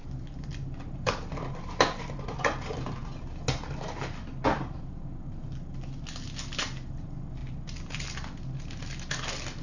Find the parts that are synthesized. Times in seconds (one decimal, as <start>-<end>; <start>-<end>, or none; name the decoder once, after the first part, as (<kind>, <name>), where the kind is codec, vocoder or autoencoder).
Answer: 0.0-3.2 (vocoder, BigVGAN v2); 3.6-4.8